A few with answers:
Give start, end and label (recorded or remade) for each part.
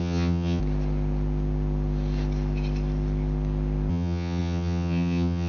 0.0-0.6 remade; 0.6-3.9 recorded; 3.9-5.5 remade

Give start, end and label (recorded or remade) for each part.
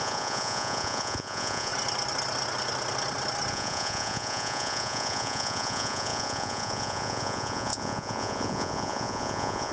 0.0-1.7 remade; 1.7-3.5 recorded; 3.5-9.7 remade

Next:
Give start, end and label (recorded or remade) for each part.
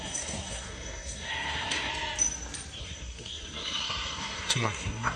0.0-1.9 remade; 1.9-2.8 recorded; 2.8-5.2 remade